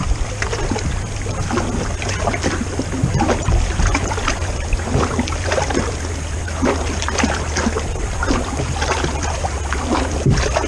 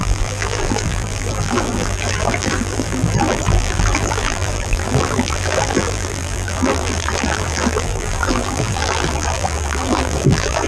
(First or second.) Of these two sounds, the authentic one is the first